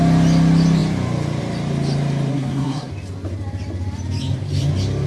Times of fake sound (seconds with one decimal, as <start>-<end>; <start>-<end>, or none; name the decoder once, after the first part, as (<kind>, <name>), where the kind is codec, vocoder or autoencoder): 2.3-2.9 (codec, SNAC)